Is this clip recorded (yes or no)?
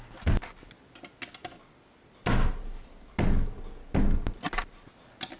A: yes